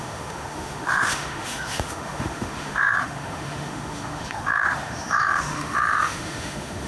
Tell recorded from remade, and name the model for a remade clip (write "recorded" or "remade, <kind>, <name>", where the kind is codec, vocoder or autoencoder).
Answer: remade, autoencoder, DAC-VAE